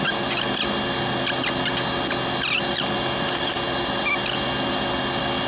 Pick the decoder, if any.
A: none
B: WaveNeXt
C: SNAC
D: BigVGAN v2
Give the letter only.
A